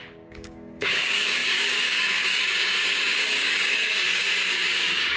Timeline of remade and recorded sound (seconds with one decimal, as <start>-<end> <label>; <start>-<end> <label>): 0.0-5.2 remade